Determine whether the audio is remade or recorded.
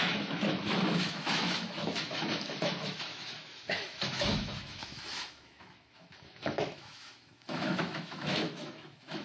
remade